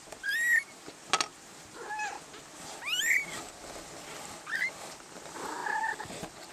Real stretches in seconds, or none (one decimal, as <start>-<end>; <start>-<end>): 0.0-6.5